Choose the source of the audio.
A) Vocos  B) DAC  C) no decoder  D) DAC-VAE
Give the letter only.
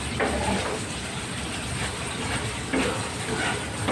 C